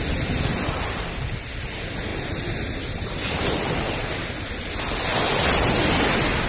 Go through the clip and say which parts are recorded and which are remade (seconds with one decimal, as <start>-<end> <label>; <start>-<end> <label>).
0.0-6.5 recorded